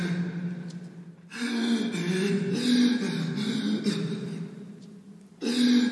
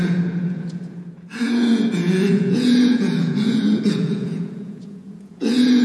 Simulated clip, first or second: second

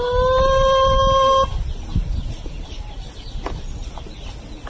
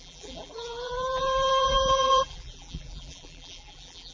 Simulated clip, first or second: second